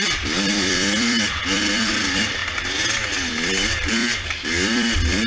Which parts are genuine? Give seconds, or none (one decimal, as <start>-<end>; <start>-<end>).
none